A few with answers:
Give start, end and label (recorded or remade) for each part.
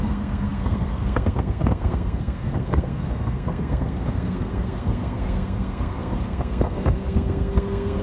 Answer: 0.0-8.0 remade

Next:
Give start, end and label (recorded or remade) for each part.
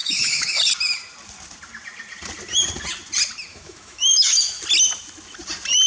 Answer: 0.0-0.6 remade; 0.6-3.5 recorded; 3.5-4.6 remade; 4.6-5.9 recorded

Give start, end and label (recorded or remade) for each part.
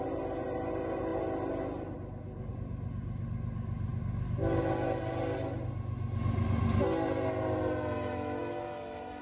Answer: 0.0-9.2 recorded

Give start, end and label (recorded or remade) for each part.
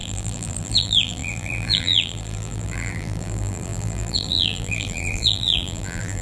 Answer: 0.0-6.2 remade